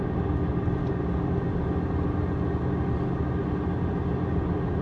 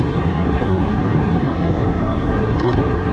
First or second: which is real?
first